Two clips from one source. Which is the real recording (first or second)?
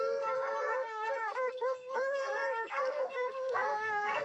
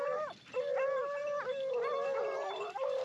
second